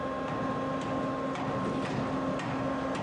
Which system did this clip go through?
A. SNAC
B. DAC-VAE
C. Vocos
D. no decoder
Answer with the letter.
D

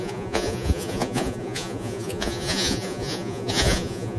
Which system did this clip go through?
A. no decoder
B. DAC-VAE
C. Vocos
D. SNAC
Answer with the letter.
C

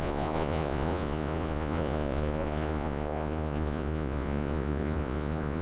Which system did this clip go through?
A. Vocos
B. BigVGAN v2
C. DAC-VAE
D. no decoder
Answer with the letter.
A